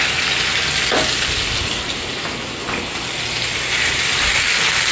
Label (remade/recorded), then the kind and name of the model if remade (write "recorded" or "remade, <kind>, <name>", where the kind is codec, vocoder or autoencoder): recorded